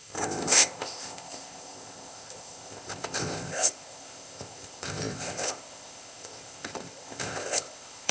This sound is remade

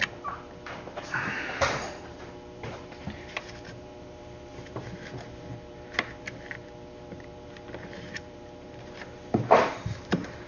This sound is remade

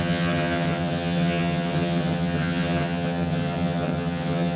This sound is remade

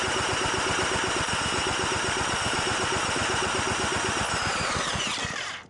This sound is recorded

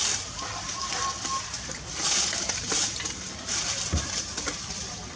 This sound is recorded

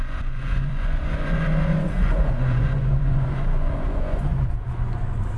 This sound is remade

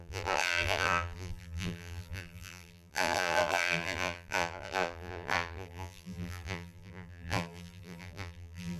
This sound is remade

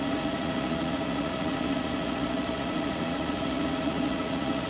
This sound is remade